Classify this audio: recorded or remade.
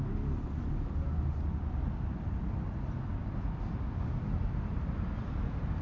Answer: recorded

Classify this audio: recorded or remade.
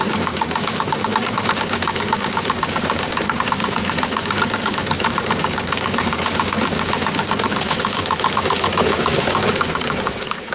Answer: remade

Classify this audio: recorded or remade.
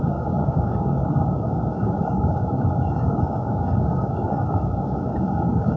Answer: remade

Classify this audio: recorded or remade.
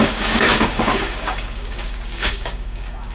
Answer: remade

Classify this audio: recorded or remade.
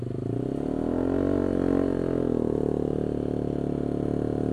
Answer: recorded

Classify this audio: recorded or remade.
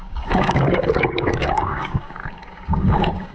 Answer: remade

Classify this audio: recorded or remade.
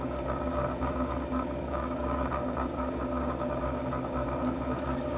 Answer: remade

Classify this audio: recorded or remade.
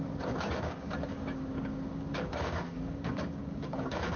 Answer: remade